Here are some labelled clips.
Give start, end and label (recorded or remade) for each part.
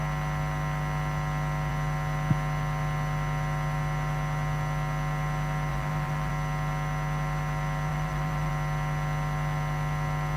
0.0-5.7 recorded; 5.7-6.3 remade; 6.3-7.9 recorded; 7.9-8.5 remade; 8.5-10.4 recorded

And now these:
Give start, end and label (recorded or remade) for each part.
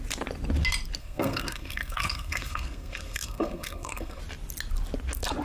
0.0-1.0 recorded; 1.0-4.2 remade; 4.2-5.4 recorded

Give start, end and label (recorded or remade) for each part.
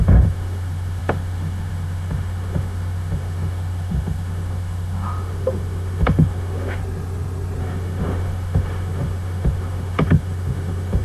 0.0-6.8 remade; 6.8-7.6 recorded; 7.6-11.0 remade